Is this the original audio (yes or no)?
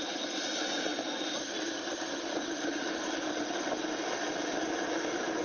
yes